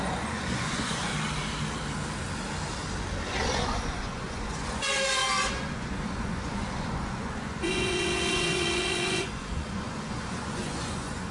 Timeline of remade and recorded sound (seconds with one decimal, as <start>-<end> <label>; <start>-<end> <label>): 0.0-1.1 remade; 1.1-3.2 recorded; 3.2-11.3 remade